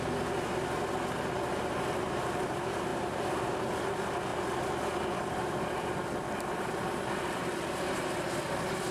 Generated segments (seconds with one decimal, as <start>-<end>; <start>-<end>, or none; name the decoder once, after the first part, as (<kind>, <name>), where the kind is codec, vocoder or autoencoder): 2.9-3.6 (vocoder, BigVGAN v2); 4.3-6.1